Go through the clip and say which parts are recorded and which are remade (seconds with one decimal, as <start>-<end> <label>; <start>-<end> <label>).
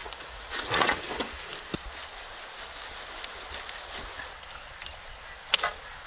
0.0-1.0 remade; 1.0-6.1 recorded